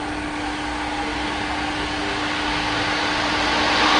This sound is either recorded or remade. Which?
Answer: recorded